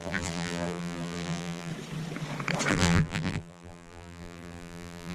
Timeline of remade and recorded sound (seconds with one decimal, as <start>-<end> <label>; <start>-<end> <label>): 0.0-1.7 remade; 1.7-2.7 recorded; 2.7-5.1 remade